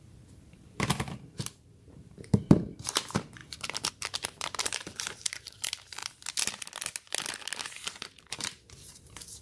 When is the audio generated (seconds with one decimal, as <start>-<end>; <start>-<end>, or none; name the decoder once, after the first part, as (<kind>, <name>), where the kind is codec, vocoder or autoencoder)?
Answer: 0.0-6.0 (vocoder, BigVGAN v2); 8.3-9.4